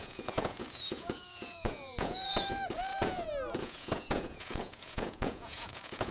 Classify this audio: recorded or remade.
remade